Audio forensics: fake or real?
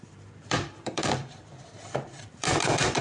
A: fake